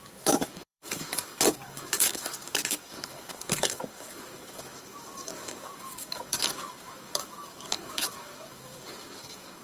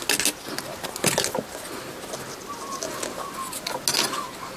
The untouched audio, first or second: second